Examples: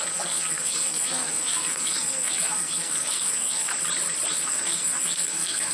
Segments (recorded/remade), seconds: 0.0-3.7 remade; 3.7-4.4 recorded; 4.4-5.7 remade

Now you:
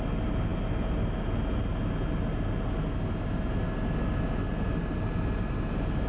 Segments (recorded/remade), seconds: 0.0-6.1 recorded

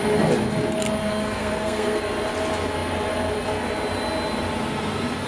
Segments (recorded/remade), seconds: 0.0-1.0 recorded; 1.0-2.0 remade; 2.0-5.3 recorded

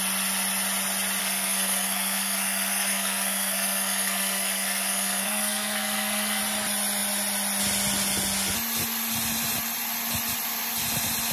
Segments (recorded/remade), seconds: 0.0-1.2 recorded; 1.2-6.4 remade; 6.4-11.3 recorded

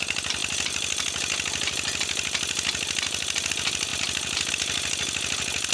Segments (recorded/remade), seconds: 0.0-5.7 recorded

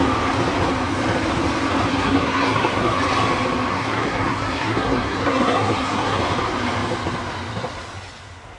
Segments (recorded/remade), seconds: 0.0-1.9 recorded; 1.9-3.0 remade; 3.0-3.7 recorded; 3.7-6.2 remade; 6.2-8.6 recorded